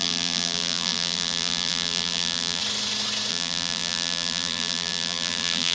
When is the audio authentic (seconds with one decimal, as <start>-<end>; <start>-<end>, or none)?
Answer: 2.6-3.3